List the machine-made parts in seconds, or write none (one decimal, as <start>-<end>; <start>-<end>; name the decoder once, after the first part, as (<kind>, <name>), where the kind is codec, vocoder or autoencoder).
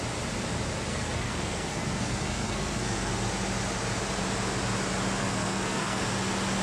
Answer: 0.9-3.1 (codec, SNAC); 5.2-6.0